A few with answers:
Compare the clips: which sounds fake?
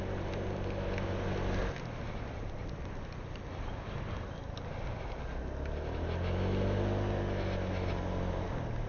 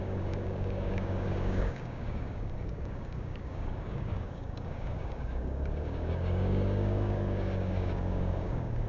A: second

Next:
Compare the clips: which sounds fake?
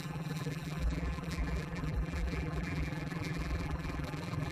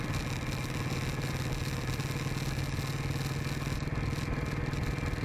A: first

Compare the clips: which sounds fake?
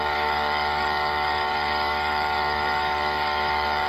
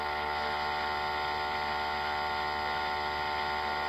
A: first